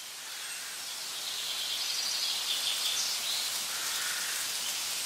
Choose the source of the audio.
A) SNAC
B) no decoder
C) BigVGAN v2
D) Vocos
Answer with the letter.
B